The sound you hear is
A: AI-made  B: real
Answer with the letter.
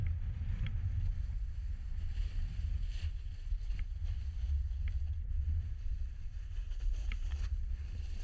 B